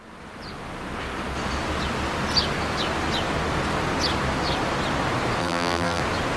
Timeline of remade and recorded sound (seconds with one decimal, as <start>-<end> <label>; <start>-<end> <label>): 0.0-5.4 recorded; 5.4-6.0 remade; 6.0-6.4 recorded